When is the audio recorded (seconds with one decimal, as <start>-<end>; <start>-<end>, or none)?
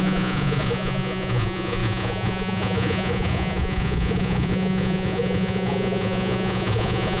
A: none